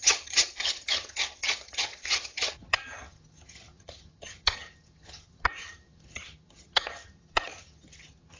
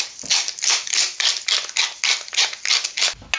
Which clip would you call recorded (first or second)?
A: second